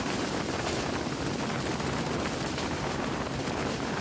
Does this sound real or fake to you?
real